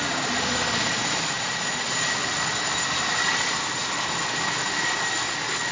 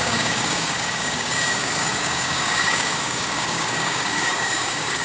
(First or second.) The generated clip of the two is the second